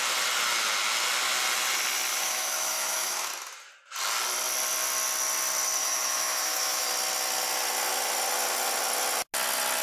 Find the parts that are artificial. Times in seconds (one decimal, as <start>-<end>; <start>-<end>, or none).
2.1-3.3; 5.8-6.9